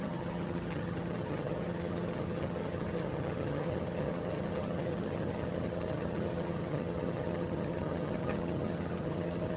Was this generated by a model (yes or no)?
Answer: yes